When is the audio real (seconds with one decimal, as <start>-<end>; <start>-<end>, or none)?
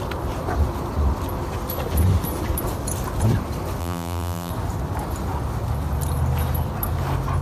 0.0-3.8; 4.5-7.4